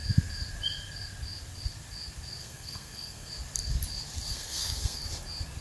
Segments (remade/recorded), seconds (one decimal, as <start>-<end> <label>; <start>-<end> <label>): 0.0-2.4 recorded; 2.4-3.3 remade; 3.3-4.3 recorded; 4.3-5.0 remade; 5.0-5.6 recorded